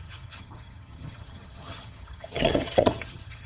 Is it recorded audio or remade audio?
remade